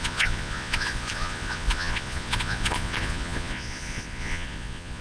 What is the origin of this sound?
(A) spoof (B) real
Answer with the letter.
A